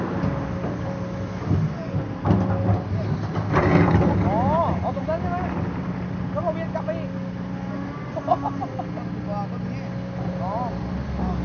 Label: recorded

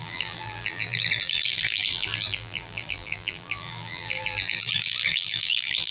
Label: remade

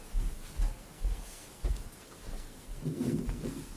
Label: remade